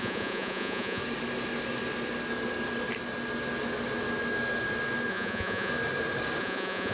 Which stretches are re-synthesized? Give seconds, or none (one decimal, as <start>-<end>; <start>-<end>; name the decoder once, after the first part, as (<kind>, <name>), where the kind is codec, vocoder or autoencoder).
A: 0.0-1.0 (vocoder, Vocos); 5.1-5.7; 6.4-6.9